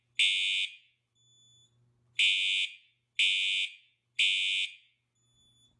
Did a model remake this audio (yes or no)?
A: no